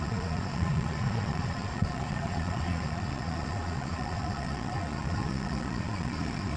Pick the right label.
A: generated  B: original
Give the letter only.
A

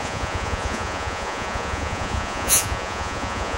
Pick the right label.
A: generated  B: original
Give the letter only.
A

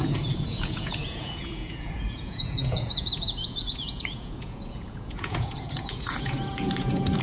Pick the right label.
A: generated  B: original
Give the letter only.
A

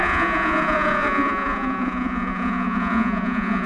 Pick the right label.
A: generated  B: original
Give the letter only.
A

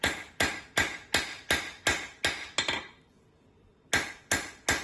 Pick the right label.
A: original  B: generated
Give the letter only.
A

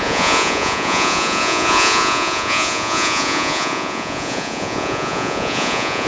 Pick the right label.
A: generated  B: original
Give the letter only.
A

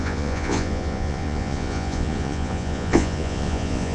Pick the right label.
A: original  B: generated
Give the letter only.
B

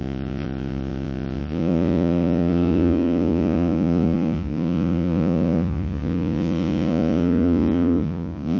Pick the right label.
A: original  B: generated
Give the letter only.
B